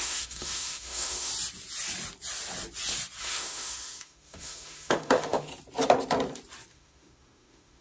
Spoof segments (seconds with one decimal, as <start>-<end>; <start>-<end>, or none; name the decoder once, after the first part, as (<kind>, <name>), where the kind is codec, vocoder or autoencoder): 0.0-1.3 (autoencoder, DAC-VAE); 3.2-5.5; 6.7-7.8